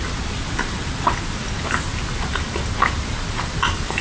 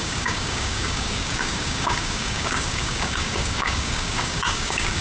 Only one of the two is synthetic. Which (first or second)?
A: second